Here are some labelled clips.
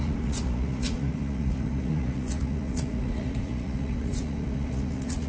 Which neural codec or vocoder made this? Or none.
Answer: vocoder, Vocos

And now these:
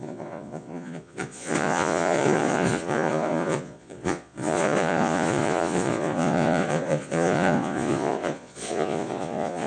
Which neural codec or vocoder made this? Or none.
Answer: vocoder, Vocos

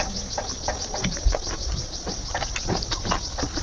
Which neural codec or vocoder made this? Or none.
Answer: none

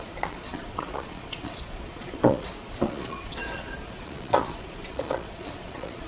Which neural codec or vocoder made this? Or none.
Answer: vocoder, Vocos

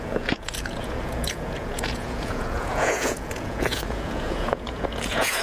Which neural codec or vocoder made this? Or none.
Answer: vocoder, Vocos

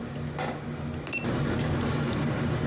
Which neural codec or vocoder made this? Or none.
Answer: none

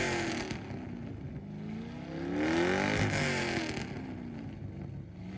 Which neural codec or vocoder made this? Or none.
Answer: none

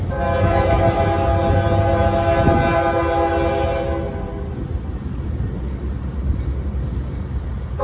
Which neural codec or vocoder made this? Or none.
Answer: none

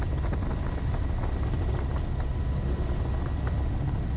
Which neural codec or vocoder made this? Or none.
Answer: none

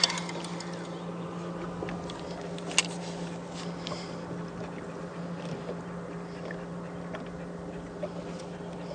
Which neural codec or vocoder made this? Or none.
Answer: none